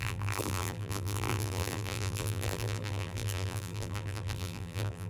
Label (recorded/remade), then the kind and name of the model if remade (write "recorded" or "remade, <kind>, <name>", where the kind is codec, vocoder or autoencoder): remade, vocoder, BigVGAN v2